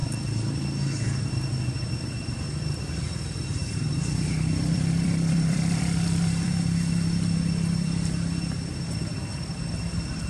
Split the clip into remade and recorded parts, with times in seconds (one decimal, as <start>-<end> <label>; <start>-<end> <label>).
0.0-1.2 recorded; 1.2-10.3 remade